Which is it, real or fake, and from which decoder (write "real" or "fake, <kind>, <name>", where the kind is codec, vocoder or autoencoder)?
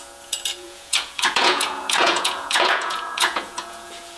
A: fake, vocoder, Vocos